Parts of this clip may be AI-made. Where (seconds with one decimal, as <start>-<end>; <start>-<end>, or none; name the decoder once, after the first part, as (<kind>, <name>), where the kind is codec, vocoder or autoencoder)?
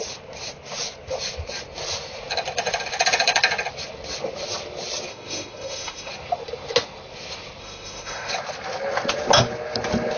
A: 5.1-6.1 (autoencoder, DAC-VAE); 7.6-8.3